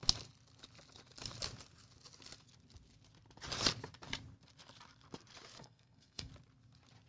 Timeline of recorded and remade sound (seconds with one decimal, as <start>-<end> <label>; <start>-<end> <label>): 0.0-5.6 recorded; 5.6-6.3 remade; 6.3-7.1 recorded